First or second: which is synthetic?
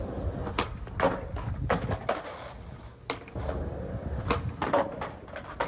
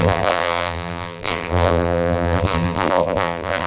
second